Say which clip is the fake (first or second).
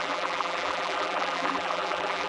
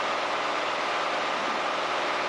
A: first